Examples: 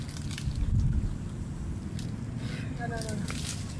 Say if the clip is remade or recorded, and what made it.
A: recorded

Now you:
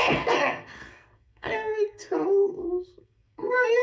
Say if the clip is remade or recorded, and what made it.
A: remade, codec, SNAC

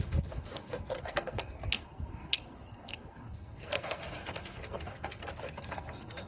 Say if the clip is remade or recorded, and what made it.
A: remade, codec, SNAC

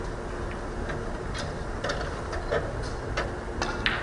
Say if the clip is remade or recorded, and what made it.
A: recorded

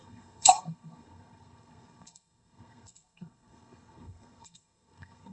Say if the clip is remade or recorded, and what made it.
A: remade, codec, SNAC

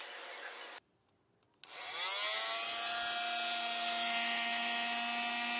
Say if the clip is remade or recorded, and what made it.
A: recorded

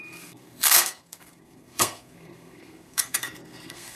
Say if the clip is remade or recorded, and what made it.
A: remade, codec, SNAC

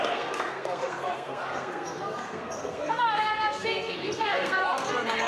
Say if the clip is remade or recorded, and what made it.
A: remade, codec, SNAC